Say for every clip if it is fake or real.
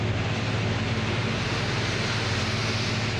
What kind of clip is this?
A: real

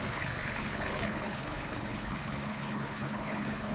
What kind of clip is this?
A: fake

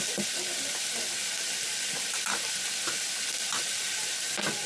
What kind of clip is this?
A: real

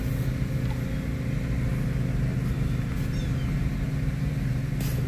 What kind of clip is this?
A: real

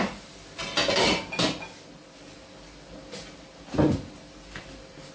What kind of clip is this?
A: real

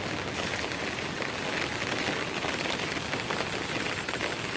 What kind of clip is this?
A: real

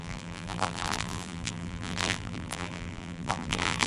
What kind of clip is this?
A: fake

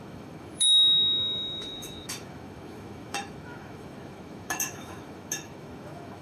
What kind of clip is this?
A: fake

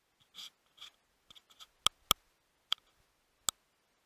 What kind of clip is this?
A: real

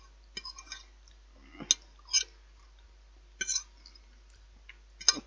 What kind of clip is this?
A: real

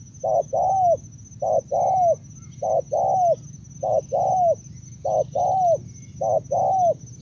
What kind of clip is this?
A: real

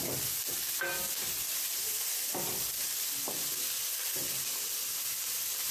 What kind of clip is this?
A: real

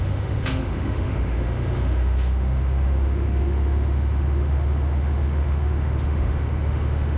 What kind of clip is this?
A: fake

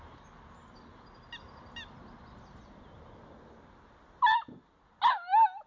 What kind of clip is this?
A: real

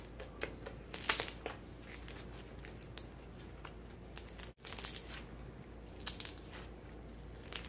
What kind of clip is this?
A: real